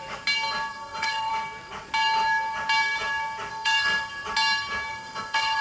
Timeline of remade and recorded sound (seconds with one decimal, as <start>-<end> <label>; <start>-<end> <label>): 0.0-0.7 recorded; 0.7-1.3 remade; 1.3-3.5 recorded; 3.5-4.1 remade; 4.1-4.9 recorded; 4.9-5.6 remade